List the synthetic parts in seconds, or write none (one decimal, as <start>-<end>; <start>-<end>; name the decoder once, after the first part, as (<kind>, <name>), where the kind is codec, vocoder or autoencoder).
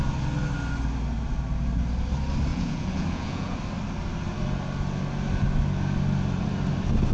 2.5-3.6 (vocoder, Vocos)